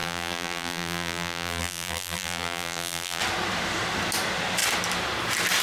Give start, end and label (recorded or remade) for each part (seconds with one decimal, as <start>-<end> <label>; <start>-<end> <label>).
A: 0.0-3.2 remade; 3.2-5.6 recorded